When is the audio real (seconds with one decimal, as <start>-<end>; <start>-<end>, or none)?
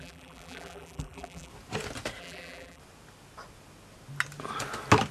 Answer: 1.5-2.2; 2.8-5.1